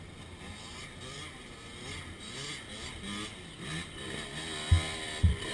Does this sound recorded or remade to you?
recorded